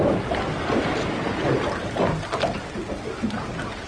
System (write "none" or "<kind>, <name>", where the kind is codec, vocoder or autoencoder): none